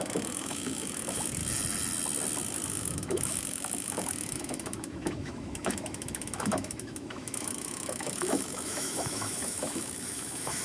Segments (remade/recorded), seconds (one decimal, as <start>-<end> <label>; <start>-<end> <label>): 0.0-1.4 remade; 1.4-2.7 recorded; 2.7-10.6 remade